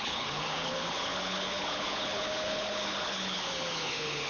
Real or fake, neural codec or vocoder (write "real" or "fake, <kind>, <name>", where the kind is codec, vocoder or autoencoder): fake, codec, HILCodec